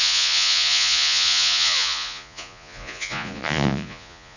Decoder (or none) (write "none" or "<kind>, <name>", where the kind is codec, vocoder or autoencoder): vocoder, Vocos